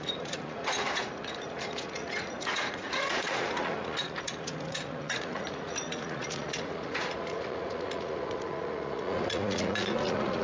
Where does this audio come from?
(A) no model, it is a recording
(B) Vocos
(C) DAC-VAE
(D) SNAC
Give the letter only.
B